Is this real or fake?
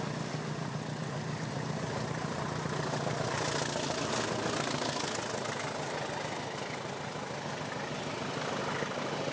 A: real